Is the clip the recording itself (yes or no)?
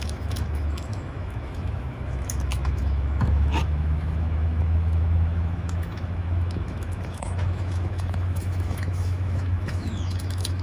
no